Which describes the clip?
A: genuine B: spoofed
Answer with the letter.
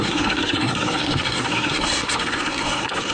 B